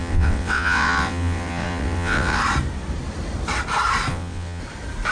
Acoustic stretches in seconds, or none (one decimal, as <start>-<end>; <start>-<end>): 2.4-4.1; 4.6-5.1